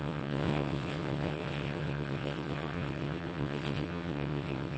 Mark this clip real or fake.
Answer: fake